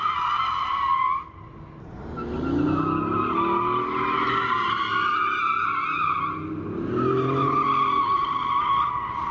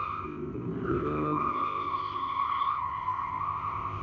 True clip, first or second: first